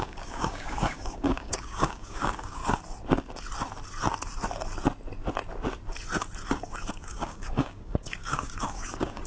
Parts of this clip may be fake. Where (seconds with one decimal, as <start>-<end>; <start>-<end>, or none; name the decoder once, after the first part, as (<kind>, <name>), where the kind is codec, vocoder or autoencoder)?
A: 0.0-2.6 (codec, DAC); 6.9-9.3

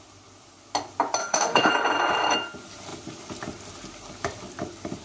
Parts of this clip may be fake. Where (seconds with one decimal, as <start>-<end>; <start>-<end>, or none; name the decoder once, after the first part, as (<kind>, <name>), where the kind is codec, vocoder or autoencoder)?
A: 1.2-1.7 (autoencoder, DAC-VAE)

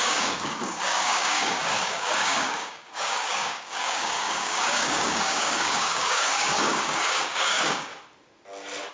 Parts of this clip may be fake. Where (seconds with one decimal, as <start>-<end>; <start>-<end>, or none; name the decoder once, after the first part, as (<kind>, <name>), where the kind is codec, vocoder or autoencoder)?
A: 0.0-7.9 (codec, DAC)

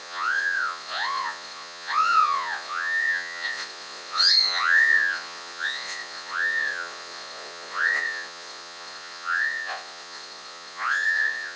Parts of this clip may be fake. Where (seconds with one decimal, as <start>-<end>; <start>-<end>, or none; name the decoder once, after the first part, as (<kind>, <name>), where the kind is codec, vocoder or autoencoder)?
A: 0.0-11.6 (vocoder, Vocos)